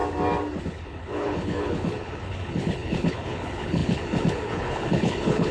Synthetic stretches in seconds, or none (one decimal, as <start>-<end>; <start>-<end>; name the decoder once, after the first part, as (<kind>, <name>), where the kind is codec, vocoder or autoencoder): 0.6-5.5 (codec, HILCodec)